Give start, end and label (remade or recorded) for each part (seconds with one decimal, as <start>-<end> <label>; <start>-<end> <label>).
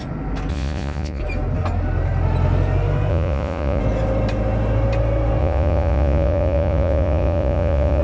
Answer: 0.0-0.5 recorded; 0.5-1.2 remade; 1.2-3.1 recorded; 3.1-3.8 remade; 3.8-5.4 recorded; 5.4-8.0 remade